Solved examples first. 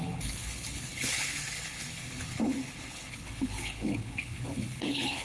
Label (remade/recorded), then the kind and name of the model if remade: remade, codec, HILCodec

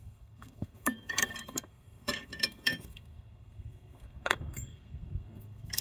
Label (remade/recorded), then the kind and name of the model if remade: remade, codec, SNAC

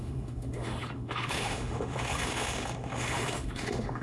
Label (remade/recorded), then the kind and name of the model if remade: remade, autoencoder, DAC-VAE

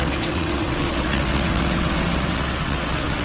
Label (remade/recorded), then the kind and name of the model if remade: remade, vocoder, WaveNeXt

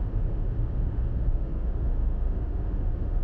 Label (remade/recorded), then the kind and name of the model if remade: remade, autoencoder, DAC-VAE